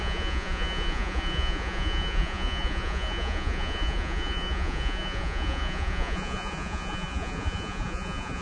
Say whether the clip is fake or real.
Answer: fake